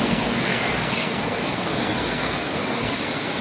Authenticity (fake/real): fake